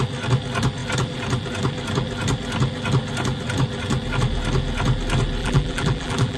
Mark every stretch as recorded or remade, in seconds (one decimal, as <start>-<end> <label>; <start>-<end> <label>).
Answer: 0.0-5.4 recorded; 5.4-6.4 remade